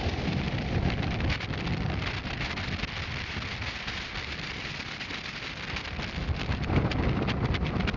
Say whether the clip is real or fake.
fake